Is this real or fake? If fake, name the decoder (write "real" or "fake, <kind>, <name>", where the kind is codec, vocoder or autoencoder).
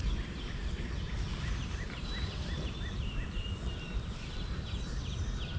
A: real